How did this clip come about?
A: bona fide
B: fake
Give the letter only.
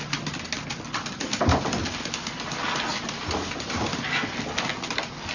A